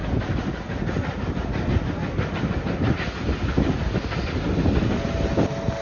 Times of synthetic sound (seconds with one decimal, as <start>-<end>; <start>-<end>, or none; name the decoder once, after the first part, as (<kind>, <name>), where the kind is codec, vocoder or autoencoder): none